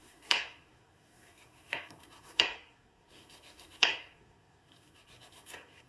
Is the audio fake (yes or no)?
yes